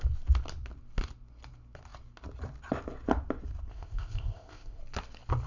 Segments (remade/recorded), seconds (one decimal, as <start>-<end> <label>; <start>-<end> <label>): 0.0-3.7 recorded; 3.7-4.8 remade; 4.8-5.5 recorded